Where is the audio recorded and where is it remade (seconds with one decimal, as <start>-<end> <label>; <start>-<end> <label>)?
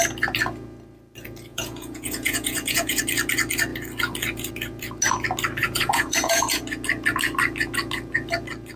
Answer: 0.0-1.5 recorded; 1.5-3.0 remade; 3.0-5.6 recorded; 5.6-6.6 remade; 6.6-8.8 recorded